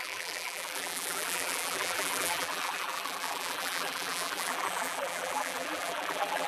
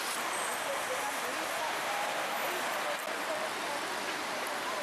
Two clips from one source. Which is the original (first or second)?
second